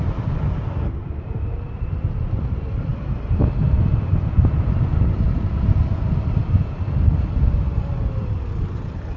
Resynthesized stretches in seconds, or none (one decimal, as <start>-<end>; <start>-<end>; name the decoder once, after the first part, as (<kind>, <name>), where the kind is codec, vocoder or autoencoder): 0.0-9.2 (vocoder, BigVGAN v2)